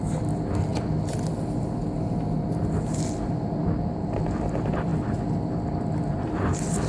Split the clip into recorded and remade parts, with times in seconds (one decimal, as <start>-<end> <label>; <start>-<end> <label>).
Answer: 0.0-6.9 recorded